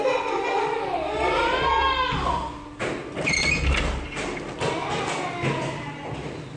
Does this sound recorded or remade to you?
recorded